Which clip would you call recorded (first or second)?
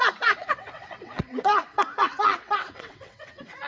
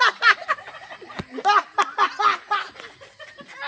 second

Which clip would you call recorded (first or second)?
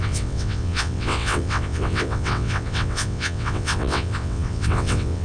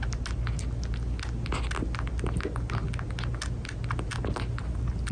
second